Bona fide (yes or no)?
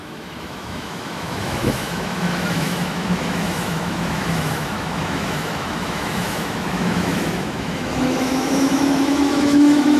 no